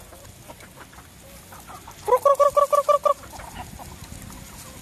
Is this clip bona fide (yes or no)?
yes